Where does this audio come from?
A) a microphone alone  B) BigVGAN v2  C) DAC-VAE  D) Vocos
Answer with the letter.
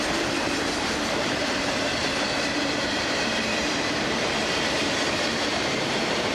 B